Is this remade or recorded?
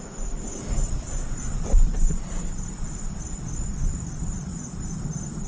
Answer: remade